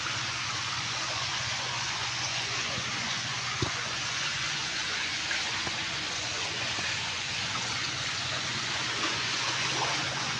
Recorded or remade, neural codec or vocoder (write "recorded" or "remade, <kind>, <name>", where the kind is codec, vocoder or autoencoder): remade, vocoder, Vocos